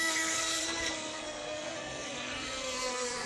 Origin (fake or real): fake